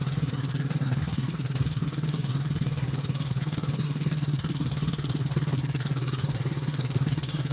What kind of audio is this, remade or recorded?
remade